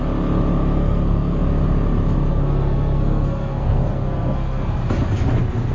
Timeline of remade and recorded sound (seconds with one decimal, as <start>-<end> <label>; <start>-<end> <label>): 0.0-0.6 recorded; 0.6-1.4 remade; 1.4-2.3 recorded; 2.3-4.7 remade; 4.7-5.7 recorded